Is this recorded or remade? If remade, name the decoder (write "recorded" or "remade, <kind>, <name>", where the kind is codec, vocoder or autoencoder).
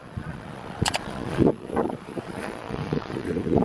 remade, vocoder, Vocos